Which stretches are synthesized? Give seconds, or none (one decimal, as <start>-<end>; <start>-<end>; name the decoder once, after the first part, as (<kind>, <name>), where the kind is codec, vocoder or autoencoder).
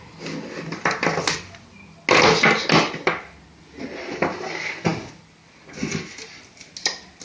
none